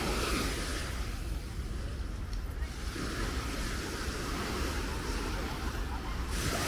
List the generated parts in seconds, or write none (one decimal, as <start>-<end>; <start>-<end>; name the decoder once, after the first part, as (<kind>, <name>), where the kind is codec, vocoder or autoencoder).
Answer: none